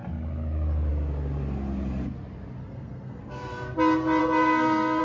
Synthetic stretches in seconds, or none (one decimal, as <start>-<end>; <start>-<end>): 2.6-3.2; 4.2-5.0

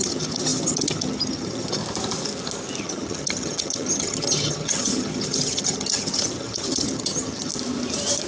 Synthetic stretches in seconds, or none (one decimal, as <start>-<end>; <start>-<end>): 0.0-1.8; 2.8-7.5

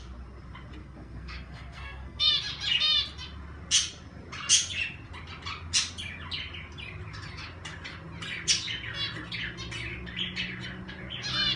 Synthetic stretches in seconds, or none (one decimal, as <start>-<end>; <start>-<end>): 0.8-2.3

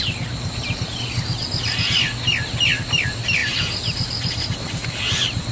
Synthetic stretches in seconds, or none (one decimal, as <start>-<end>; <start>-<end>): 3.4-5.5

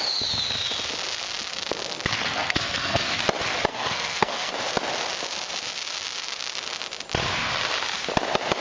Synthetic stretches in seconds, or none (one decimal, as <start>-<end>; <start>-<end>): 2.1-3.2; 3.7-4.5